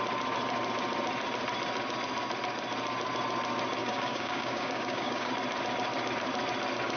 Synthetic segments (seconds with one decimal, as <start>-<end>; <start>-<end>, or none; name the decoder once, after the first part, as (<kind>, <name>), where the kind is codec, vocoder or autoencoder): 3.8-5.3 (codec, DAC)